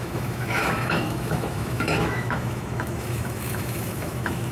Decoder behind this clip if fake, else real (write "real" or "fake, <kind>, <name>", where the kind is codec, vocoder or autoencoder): fake, autoencoder, DAC-VAE